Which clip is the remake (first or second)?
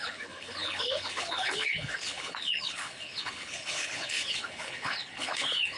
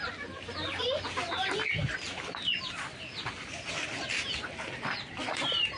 first